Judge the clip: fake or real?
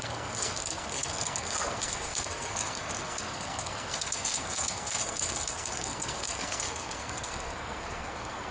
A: fake